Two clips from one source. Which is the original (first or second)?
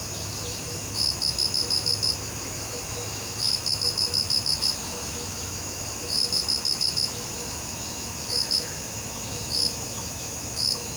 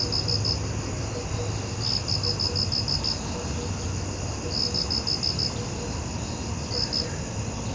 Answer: second